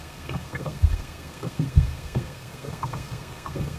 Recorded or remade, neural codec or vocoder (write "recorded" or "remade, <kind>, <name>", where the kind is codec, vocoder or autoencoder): remade, codec, SNAC